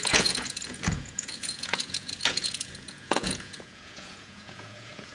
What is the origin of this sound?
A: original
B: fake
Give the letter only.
B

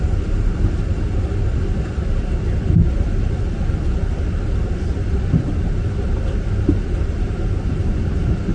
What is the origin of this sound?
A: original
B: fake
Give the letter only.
A